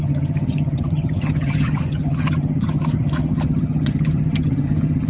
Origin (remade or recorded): remade